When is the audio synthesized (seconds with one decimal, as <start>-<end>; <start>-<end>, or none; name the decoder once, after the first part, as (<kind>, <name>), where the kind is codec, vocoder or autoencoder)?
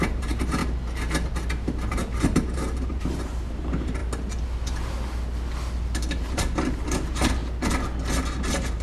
0.0-0.6 (vocoder, BigVGAN v2); 1.5-4.0; 6.2-7.4; 8.4-8.8